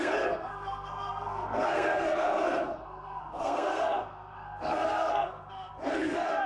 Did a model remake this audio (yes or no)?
yes